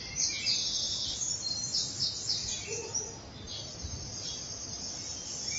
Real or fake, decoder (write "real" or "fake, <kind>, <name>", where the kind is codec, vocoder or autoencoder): real